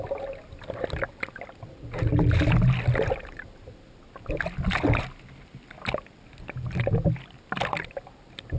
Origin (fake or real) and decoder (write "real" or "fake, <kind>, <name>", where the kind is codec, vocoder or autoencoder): real